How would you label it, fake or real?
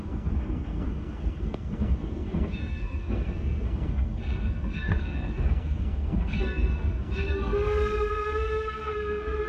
fake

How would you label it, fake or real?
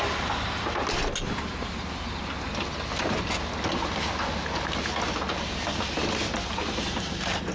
real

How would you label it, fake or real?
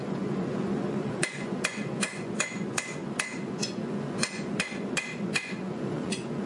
fake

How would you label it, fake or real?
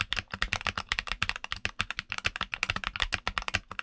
real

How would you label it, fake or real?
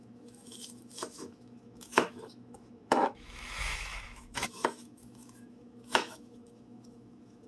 fake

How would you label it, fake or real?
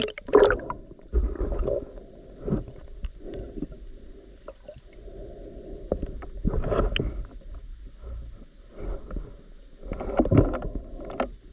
real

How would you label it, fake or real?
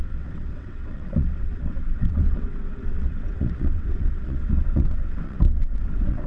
fake